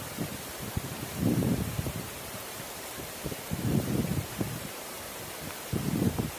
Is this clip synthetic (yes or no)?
yes